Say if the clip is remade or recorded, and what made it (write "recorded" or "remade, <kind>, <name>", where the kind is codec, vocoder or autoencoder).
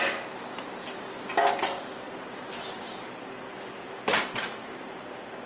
recorded